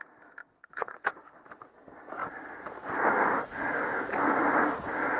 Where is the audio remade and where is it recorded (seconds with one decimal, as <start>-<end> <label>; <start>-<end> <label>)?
0.0-0.4 recorded; 0.4-1.1 remade; 1.1-5.2 recorded